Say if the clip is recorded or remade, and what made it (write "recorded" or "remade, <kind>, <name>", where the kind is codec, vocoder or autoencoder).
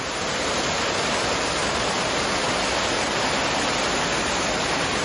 recorded